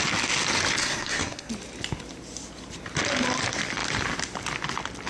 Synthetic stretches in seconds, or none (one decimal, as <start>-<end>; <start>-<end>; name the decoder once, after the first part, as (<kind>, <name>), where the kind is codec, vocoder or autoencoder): 0.8-1.5 (codec, SNAC)